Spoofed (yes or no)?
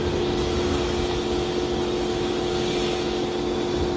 no